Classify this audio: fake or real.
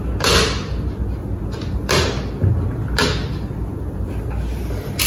real